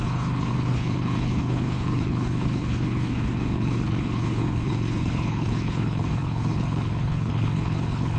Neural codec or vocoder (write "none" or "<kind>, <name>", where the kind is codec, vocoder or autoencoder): codec, HILCodec